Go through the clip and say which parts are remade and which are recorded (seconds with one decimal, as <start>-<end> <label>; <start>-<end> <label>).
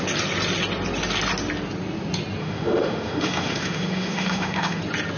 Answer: 0.0-2.4 recorded; 2.4-4.8 remade; 4.8-5.2 recorded